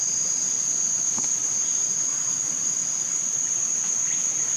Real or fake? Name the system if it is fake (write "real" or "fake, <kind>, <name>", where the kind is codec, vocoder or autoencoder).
real